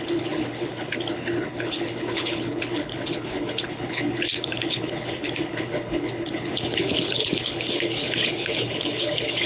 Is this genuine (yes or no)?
no